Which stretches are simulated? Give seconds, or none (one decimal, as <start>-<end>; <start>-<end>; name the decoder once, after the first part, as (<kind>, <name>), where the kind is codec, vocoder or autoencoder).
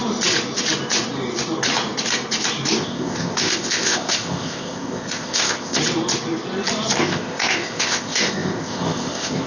2.8-5.8 (codec, ZipCodec); 7.0-9.5